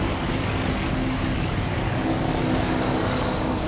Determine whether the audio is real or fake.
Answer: fake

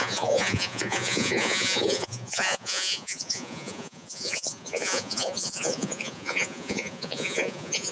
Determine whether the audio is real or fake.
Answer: fake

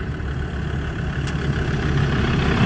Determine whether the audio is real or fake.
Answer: real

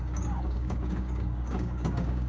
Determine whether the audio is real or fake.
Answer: fake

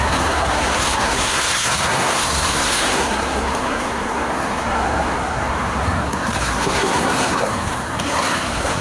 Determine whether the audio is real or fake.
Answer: fake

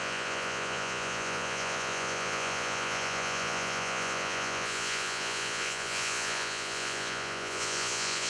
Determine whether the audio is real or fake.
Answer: fake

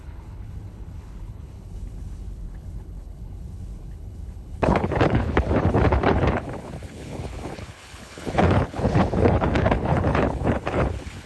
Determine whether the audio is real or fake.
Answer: fake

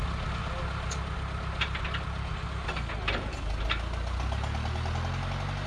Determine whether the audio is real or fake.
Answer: real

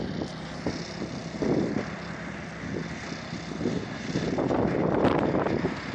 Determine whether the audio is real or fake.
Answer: real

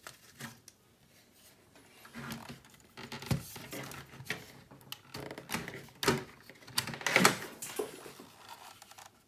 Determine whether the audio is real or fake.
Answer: real